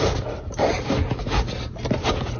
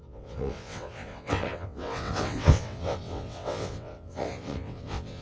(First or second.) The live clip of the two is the first